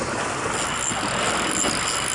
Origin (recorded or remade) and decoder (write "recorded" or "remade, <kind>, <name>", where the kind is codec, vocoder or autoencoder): recorded